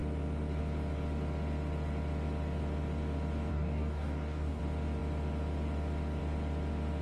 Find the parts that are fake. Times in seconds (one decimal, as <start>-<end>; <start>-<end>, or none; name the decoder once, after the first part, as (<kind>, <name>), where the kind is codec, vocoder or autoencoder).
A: 3.5-4.6 (codec, DAC)